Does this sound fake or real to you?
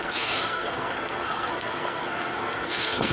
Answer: fake